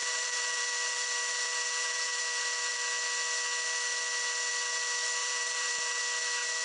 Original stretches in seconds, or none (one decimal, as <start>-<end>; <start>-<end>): 2.2-5.2; 6.0-6.6

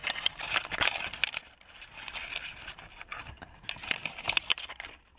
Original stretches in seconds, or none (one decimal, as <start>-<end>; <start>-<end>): 0.0-5.2